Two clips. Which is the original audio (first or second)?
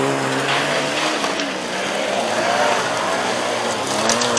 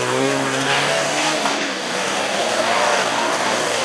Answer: first